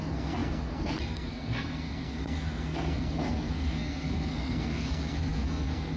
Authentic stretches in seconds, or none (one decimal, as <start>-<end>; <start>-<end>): none